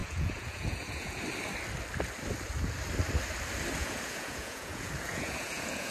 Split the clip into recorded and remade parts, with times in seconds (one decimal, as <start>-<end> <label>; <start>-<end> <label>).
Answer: 0.0-1.2 remade; 1.2-3.8 recorded; 3.8-5.9 remade